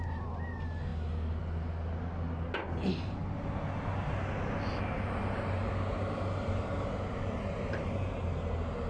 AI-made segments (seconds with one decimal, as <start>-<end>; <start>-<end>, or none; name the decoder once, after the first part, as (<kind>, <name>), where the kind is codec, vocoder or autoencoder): none